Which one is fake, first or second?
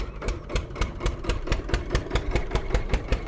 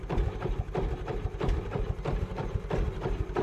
first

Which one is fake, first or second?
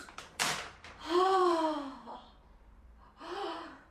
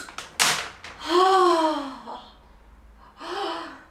first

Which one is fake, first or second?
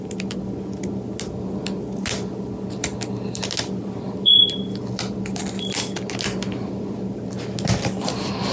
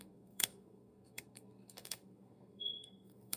second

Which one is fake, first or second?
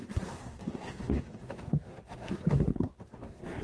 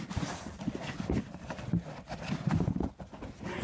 first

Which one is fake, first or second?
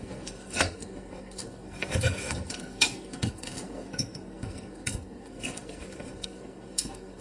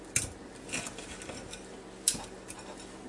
first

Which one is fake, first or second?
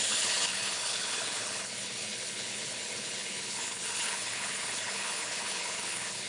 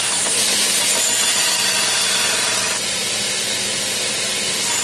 first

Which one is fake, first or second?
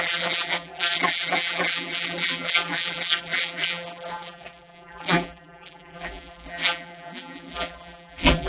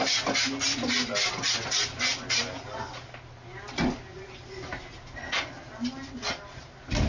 first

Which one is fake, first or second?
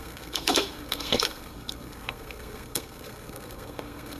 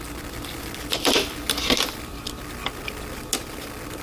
first